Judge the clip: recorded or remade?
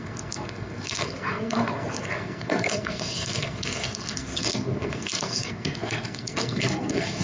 remade